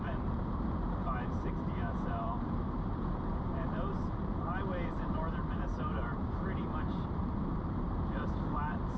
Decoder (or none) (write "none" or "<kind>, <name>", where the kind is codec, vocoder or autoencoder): vocoder, BigVGAN v2